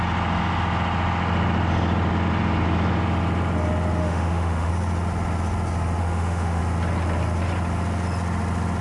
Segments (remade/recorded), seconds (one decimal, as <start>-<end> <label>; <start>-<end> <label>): 0.0-4.0 recorded; 4.0-4.7 remade; 4.7-6.0 recorded; 6.0-6.6 remade; 6.6-8.8 recorded